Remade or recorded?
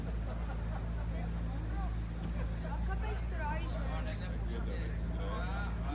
recorded